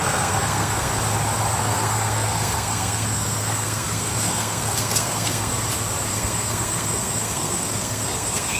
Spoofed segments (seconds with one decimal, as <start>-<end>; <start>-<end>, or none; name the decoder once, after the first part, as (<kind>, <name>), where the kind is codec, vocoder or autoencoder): 0.0-0.9 (codec, SNAC); 1.6-5.5; 6.1-8.6